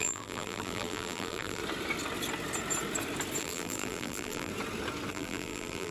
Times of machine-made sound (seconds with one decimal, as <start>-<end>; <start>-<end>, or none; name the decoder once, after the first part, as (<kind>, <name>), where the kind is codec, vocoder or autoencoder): 0.0-1.6 (vocoder, BigVGAN v2); 3.4-4.5; 5.1-5.9

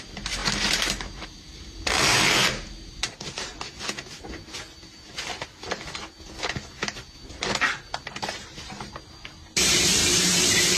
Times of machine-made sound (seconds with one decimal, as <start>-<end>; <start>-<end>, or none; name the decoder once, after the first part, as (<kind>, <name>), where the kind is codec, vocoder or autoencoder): 0.0-3.5 (vocoder, BigVGAN v2); 8.3-10.8

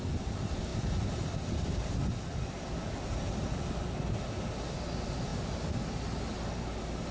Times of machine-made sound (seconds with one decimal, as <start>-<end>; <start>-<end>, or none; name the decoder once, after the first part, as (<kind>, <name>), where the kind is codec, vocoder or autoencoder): none